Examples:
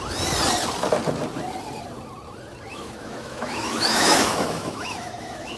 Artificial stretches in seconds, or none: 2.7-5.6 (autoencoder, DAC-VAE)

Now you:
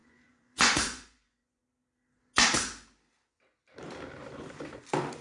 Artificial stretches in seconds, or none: 0.0-1.6 (vocoder, Vocos)

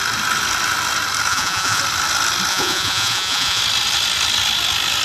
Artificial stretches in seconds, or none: 1.3-1.8 (vocoder, Vocos); 2.5-3.6

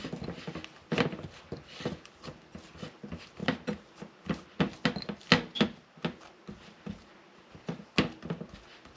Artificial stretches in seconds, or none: none

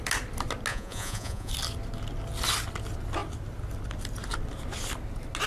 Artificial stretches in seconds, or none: 0.7-1.5 (vocoder, Vocos)

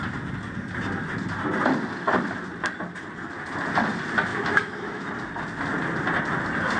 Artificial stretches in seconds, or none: 4.3-5.1 (autoencoder, DAC-VAE)

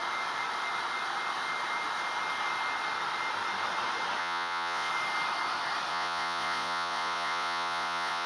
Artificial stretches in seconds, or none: 4.2-4.9 (vocoder, Vocos); 5.9-8.3

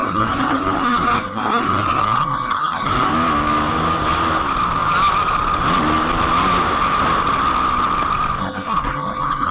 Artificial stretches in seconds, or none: 0.0-3.1 (codec, SNAC); 8.4-9.5